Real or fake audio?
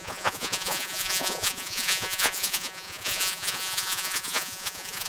fake